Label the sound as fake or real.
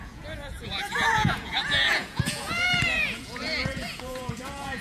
fake